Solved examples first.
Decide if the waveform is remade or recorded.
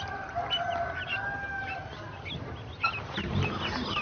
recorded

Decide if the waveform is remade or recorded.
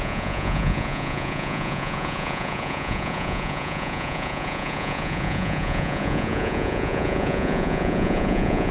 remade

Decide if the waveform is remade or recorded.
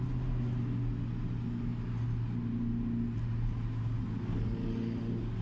recorded